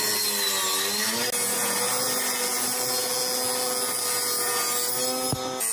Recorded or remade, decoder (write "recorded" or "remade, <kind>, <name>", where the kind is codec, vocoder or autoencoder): recorded